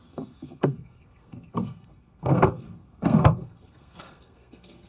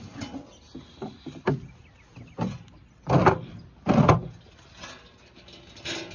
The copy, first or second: first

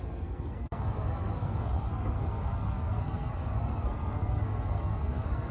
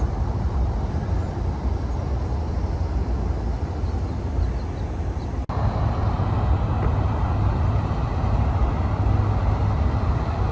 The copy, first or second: first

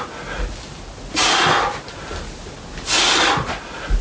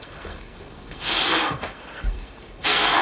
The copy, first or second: second